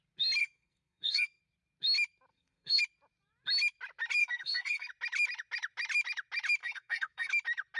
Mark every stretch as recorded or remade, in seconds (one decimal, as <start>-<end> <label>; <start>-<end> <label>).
0.0-0.4 recorded; 0.4-1.4 remade; 1.4-2.3 recorded; 2.3-2.8 remade; 2.8-4.2 recorded; 4.2-4.9 remade; 4.9-6.6 recorded; 6.6-7.3 remade; 7.3-7.8 recorded